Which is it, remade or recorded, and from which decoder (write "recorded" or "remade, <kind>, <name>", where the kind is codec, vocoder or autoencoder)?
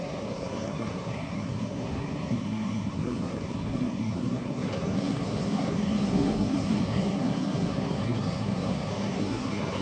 remade, codec, SNAC